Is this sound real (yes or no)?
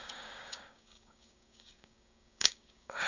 no